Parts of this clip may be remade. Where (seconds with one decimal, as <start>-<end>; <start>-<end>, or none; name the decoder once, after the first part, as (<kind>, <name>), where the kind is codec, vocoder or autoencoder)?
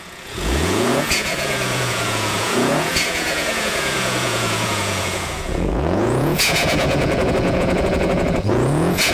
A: 0.0-9.1 (vocoder, Vocos)